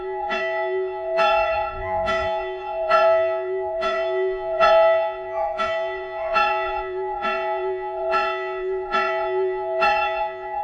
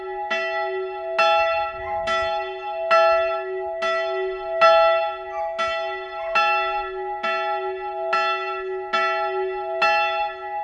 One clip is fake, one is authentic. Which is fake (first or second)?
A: first